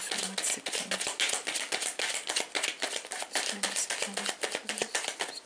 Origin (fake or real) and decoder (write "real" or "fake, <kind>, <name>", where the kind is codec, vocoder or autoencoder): real